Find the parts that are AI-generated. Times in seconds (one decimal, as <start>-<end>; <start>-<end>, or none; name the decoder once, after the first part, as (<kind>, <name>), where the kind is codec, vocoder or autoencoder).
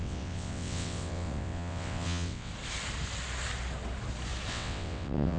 0.0-2.5 (vocoder, WaveNeXt); 4.5-5.4